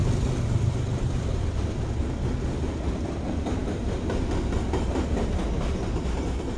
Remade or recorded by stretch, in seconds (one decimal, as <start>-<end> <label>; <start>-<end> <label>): 0.0-1.8 remade; 1.8-3.6 recorded; 3.6-4.6 remade; 4.6-6.6 recorded

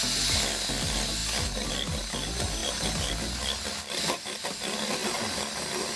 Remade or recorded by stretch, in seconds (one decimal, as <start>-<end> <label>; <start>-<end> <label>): 0.0-6.0 recorded

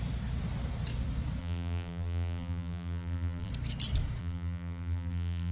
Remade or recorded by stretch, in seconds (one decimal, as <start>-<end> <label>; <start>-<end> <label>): 0.0-1.4 recorded; 1.4-3.5 remade; 3.5-4.2 recorded; 4.2-5.5 remade

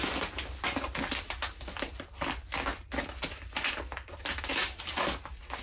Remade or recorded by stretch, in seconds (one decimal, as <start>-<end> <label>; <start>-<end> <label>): 0.0-2.7 recorded; 2.7-4.4 remade; 4.4-5.6 recorded

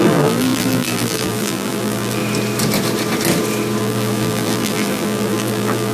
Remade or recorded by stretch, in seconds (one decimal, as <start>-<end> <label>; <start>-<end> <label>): 0.0-2.2 remade; 2.2-3.8 recorded; 3.8-5.9 remade

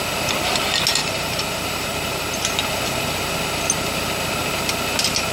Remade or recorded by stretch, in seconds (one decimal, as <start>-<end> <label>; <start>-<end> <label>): 0.0-1.0 recorded; 1.0-2.5 remade; 2.5-5.3 recorded

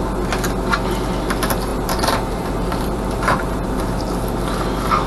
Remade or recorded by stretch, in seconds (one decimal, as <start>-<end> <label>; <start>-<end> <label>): 0.0-1.7 recorded; 1.7-4.0 remade; 4.0-5.1 recorded

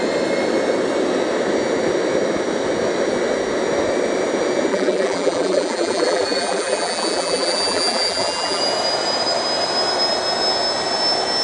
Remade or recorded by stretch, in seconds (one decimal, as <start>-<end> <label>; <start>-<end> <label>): 0.0-4.7 recorded; 4.7-8.6 remade; 8.6-11.4 recorded